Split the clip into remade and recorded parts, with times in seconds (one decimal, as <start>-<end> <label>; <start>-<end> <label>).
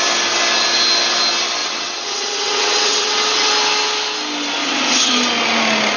0.0-1.6 recorded; 1.6-3.5 remade; 3.5-4.6 recorded; 4.6-5.1 remade; 5.1-6.0 recorded